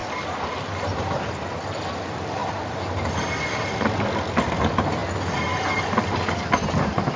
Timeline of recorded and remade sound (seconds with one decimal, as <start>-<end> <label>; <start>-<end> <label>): 0.0-7.2 recorded